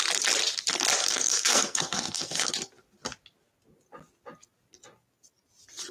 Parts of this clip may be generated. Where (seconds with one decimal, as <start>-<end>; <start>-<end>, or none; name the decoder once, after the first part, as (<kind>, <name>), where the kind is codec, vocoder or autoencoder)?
1.0-2.5 (codec, SNAC)